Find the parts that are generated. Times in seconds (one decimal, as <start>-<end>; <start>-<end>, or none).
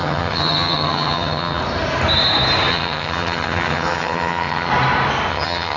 0.0-1.6; 2.7-4.7; 5.3-5.8